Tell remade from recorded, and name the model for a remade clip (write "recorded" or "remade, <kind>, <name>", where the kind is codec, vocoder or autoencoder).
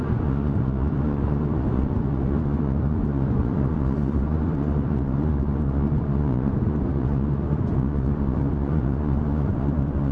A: remade, vocoder, Vocos